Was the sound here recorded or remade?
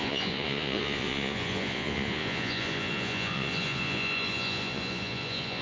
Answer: remade